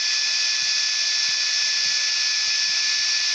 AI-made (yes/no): no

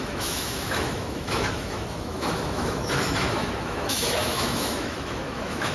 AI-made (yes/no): yes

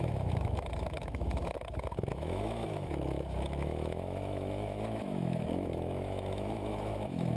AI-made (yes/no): yes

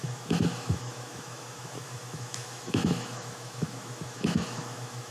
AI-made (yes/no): yes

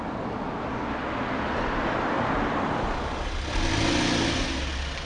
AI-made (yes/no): no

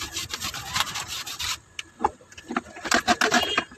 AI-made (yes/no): no